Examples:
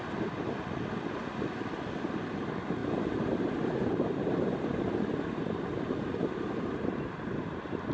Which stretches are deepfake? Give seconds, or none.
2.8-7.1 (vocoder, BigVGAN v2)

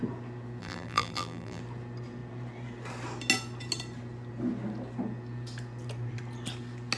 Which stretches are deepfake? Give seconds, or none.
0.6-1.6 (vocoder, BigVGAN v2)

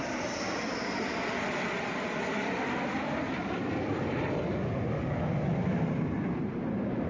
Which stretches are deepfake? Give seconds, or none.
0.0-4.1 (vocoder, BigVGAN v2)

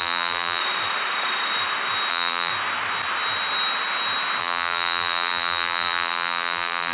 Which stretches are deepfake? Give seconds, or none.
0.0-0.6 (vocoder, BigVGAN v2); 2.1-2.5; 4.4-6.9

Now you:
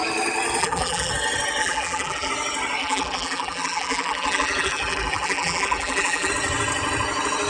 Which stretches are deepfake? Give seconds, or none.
0.6-1.1 (vocoder, BigVGAN v2); 1.6-2.3; 2.8-6.3

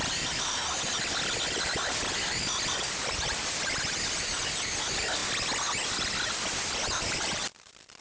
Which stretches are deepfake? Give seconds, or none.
none